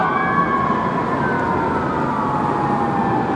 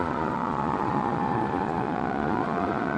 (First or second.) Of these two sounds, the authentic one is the first